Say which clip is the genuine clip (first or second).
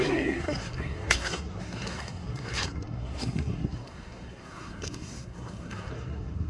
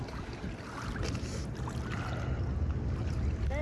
second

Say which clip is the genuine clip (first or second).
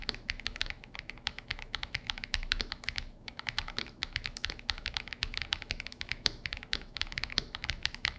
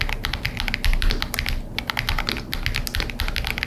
second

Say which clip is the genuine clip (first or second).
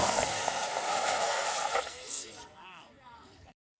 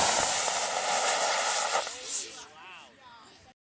second